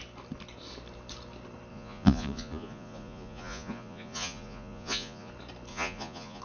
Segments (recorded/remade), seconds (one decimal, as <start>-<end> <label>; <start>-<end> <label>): 0.0-1.7 recorded; 1.7-5.3 remade; 5.3-5.7 recorded; 5.7-6.4 remade